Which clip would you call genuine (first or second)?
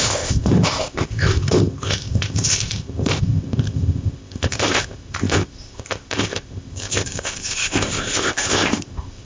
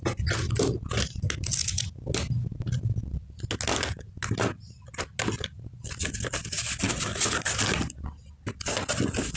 second